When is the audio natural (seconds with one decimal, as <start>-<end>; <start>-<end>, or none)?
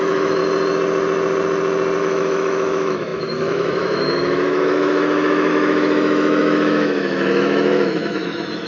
0.4-2.0